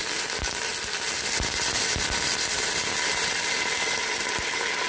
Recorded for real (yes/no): yes